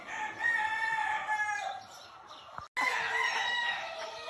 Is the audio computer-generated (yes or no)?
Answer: no